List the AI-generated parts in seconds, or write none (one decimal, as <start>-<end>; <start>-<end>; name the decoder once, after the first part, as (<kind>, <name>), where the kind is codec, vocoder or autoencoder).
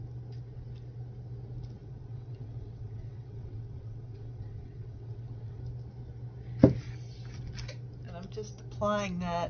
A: 1.8-5.6 (vocoder, WaveNeXt)